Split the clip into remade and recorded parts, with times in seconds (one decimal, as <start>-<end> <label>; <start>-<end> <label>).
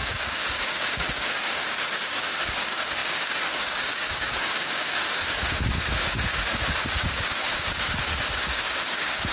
0.0-9.3 remade